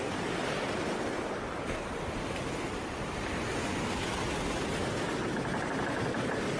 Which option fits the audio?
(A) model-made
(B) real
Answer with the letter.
B